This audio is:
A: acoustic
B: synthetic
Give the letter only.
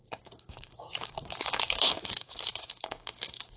B